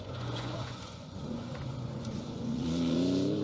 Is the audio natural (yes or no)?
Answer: no